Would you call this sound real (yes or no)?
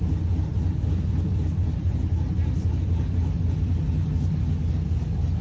yes